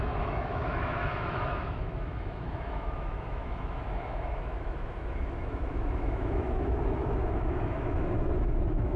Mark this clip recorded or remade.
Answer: remade